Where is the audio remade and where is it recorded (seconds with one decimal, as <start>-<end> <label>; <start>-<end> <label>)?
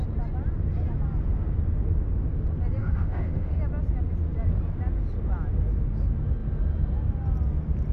0.0-2.8 recorded; 2.8-3.6 remade; 3.6-7.9 recorded